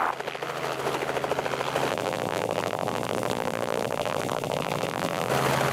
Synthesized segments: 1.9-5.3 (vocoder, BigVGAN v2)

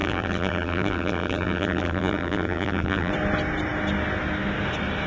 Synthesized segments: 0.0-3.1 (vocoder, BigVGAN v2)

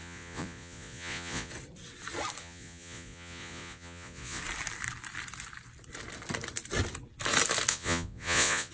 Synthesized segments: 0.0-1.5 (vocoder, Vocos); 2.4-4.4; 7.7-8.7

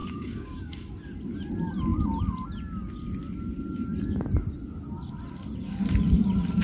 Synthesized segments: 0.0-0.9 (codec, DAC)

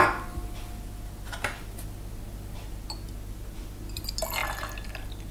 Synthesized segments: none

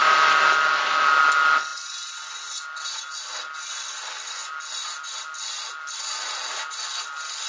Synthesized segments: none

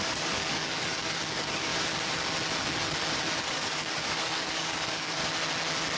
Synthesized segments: 0.0-1.7 (codec, DAC); 3.4-5.2